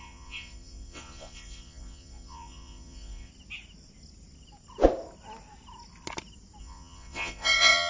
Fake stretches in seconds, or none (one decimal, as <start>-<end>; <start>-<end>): 0.0-3.3; 6.6-7.9